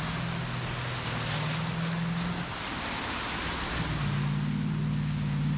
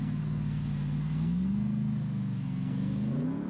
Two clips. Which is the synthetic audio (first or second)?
second